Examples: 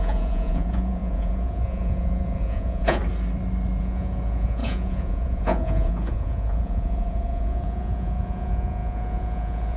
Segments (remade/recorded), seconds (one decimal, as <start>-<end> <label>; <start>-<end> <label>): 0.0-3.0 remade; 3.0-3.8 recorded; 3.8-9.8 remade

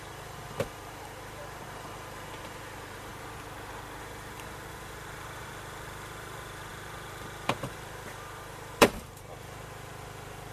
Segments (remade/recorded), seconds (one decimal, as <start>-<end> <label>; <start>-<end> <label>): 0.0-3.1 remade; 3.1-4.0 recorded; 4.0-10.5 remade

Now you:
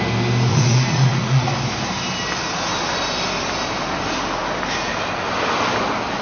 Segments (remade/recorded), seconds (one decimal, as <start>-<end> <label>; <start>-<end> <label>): 0.0-0.5 recorded; 0.5-1.5 remade; 1.5-6.2 recorded

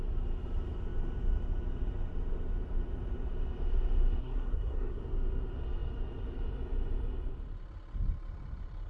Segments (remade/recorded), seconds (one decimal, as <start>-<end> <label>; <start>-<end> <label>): 0.0-4.2 recorded; 4.2-5.0 remade; 5.0-8.9 recorded

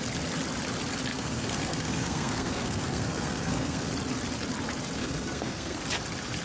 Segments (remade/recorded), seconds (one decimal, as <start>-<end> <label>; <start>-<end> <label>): 0.0-1.1 recorded; 1.1-3.9 remade; 3.9-5.0 recorded; 5.0-5.8 remade; 5.8-6.4 recorded